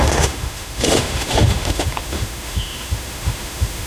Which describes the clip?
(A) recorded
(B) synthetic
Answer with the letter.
B